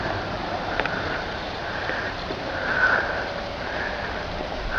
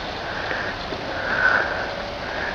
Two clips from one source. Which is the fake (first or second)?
first